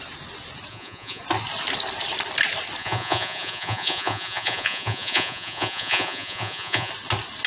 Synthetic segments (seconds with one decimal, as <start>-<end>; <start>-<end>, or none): 0.7-1.2; 2.8-6.9